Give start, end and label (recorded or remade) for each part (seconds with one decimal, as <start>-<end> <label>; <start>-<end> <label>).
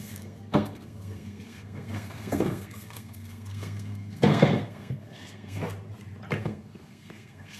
0.0-5.6 remade; 5.6-6.4 recorded; 6.4-7.6 remade